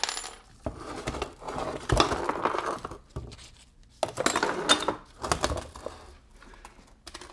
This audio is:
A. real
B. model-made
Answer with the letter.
A